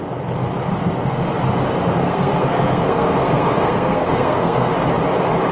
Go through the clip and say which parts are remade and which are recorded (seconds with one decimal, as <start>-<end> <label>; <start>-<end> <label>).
0.0-2.0 recorded; 2.0-4.7 remade; 4.7-5.5 recorded